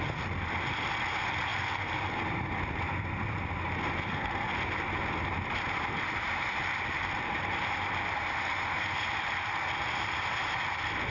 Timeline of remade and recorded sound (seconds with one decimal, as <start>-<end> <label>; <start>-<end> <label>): 0.0-11.1 recorded